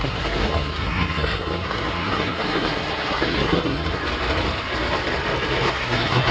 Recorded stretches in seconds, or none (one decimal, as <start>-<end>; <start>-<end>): 4.0-5.7

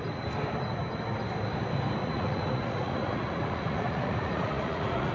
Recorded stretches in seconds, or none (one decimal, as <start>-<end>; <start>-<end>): 0.0-2.0

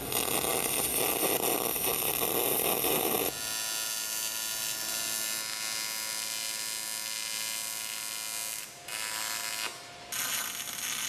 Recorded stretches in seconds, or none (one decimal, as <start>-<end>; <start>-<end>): 0.0-11.1

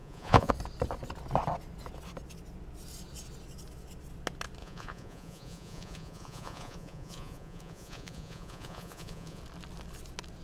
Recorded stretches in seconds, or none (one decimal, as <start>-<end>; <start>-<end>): 0.5-4.6; 9.4-10.4

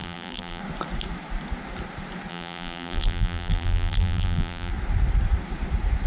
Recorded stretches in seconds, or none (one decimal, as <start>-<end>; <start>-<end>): 0.6-2.3; 4.7-6.1